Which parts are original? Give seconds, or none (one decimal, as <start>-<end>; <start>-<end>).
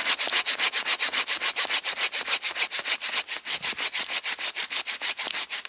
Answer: 0.0-5.7